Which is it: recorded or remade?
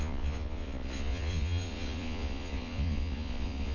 remade